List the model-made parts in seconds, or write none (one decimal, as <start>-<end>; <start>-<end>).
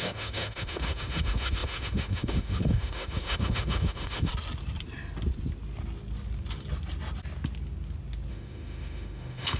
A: 0.0-4.3; 8.3-9.6